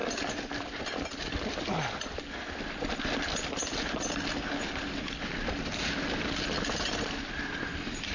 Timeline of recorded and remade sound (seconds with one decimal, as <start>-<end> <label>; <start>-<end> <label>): 0.0-8.1 recorded